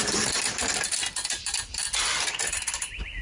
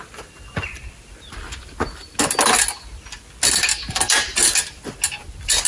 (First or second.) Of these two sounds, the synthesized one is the first